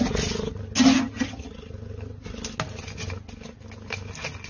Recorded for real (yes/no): yes